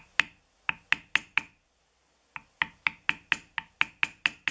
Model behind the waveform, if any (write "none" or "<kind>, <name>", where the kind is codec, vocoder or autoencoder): none